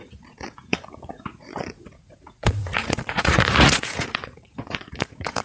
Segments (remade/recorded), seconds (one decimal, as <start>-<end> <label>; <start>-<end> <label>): 0.0-5.4 remade